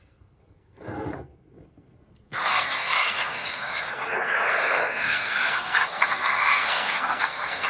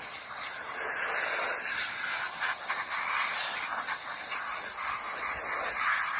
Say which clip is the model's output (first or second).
first